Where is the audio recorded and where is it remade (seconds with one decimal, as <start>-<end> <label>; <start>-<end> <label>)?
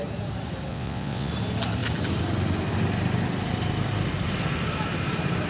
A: 0.0-0.7 recorded; 0.7-1.3 remade; 1.3-5.5 recorded